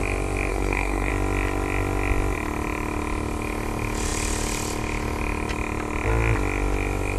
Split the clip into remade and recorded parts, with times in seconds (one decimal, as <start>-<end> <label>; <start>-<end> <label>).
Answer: 0.0-0.5 recorded; 0.5-1.1 remade; 1.1-7.2 recorded